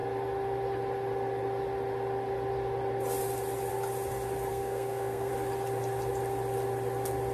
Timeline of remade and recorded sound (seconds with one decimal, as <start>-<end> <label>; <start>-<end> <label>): 0.0-4.5 recorded; 4.5-5.3 remade; 5.3-7.3 recorded